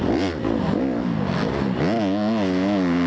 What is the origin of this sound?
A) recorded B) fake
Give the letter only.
A